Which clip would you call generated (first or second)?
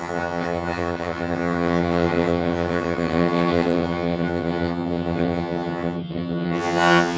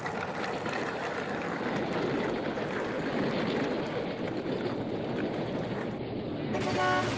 first